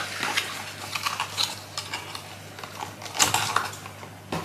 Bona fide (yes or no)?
yes